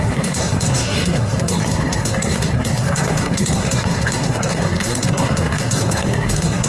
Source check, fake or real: fake